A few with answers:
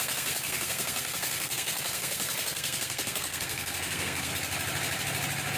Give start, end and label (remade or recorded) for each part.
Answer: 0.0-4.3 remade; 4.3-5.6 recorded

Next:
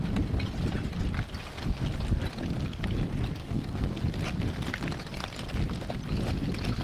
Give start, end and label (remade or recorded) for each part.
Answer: 0.0-3.4 recorded; 3.4-4.0 remade; 4.0-6.8 recorded

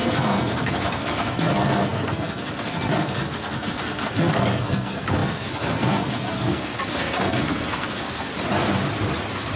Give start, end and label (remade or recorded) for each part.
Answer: 0.0-8.3 remade; 8.3-9.6 recorded